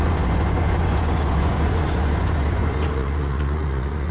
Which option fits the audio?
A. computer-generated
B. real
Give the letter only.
A